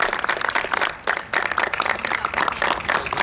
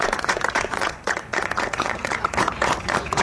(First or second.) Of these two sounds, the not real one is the second